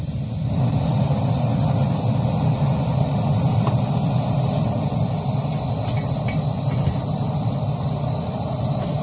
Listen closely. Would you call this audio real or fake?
fake